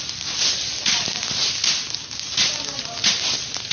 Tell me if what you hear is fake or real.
real